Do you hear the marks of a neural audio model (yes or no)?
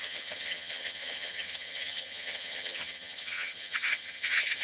yes